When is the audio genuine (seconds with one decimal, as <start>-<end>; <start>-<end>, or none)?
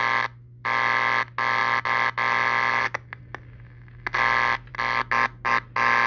0.0-6.1